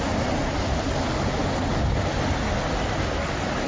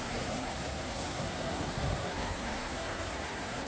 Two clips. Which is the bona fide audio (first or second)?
first